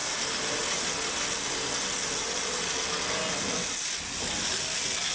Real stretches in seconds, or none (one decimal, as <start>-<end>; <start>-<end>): 0.0-5.1